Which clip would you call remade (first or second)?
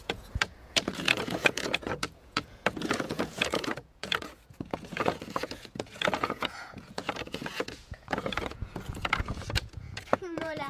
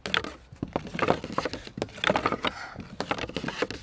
first